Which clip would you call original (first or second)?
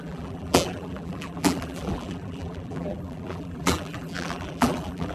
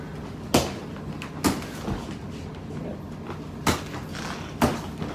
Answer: second